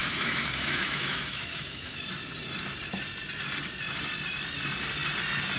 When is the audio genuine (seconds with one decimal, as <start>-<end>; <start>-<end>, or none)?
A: 2.0-5.6